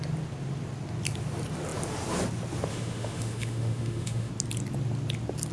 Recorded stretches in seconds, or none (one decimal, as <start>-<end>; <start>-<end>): 0.0-2.7; 4.3-5.5